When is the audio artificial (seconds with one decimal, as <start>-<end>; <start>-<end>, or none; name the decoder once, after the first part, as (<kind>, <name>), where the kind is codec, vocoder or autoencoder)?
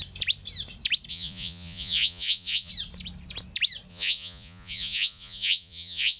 1.1-2.7 (vocoder, Vocos); 3.9-6.2